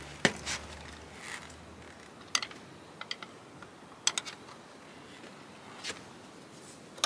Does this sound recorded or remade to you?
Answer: recorded